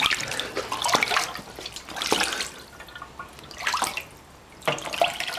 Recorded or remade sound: recorded